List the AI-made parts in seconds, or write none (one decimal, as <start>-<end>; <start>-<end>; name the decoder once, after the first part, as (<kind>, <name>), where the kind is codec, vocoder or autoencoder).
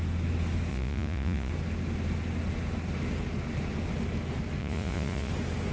0.7-1.5 (vocoder, Vocos); 4.6-5.3